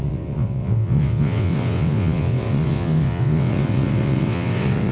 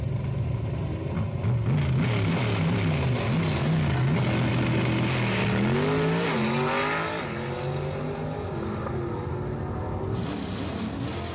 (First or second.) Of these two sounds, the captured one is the second